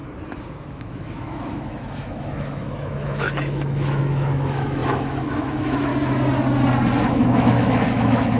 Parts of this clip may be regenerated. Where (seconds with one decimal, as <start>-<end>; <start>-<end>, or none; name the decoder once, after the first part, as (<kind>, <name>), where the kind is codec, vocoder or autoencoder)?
0.5-5.9 (autoencoder, DAC-VAE); 7.1-8.4